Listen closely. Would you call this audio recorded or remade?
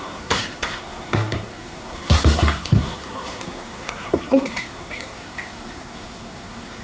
remade